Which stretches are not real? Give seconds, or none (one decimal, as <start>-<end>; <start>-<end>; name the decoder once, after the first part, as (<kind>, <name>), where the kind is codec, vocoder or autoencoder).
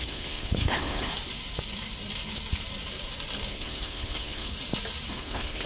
0.0-1.1 (codec, HILCodec); 3.5-4.5; 5.1-5.7